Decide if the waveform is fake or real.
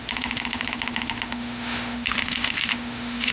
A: fake